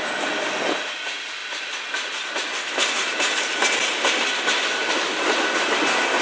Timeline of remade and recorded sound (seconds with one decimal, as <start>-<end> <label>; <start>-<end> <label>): 0.0-6.2 recorded